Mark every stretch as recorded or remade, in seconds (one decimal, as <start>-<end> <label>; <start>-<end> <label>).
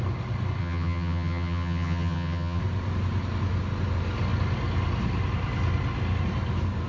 0.0-0.6 recorded; 0.6-2.6 remade; 2.6-6.9 recorded